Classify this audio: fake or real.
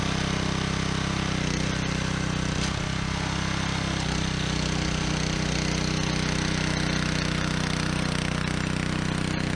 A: real